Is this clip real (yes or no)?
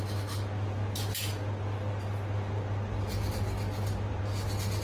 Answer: yes